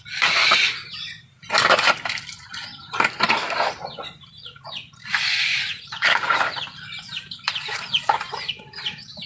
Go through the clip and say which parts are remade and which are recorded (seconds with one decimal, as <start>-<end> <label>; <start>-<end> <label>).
0.0-5.5 recorded; 5.5-8.5 remade; 8.5-9.3 recorded